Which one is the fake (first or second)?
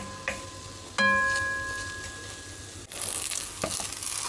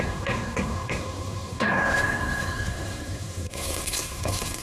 second